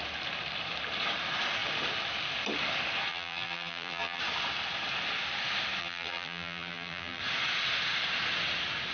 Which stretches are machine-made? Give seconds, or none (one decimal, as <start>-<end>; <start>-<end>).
3.1-4.2; 5.8-7.2